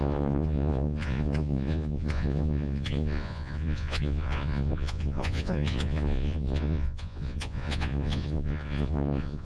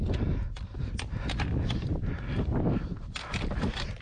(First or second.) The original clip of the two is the second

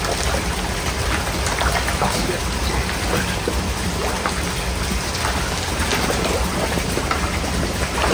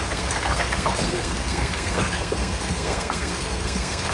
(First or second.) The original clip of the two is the first